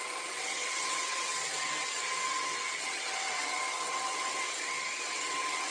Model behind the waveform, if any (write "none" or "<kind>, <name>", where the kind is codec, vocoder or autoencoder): vocoder, WaveNeXt